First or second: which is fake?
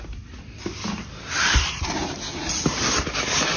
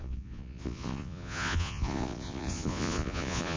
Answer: second